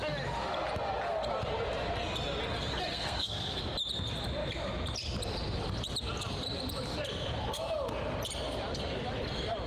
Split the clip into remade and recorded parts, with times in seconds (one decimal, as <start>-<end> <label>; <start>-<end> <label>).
0.0-2.9 recorded; 2.9-3.6 remade; 3.6-9.7 recorded